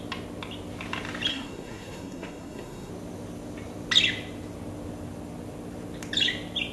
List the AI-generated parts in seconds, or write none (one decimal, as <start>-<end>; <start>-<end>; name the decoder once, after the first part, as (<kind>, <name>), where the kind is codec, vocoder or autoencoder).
1.3-2.9 (codec, SNAC)